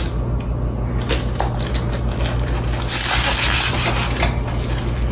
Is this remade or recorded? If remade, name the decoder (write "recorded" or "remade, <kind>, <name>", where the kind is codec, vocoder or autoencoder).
recorded